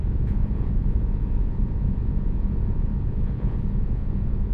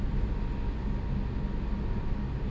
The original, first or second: second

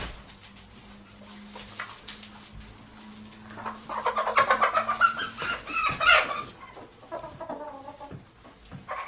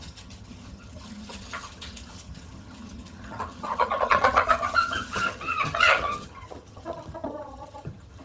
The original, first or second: first